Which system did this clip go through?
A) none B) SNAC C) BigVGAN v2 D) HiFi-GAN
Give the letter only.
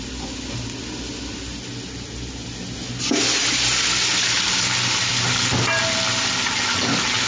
A